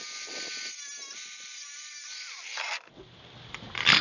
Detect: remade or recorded recorded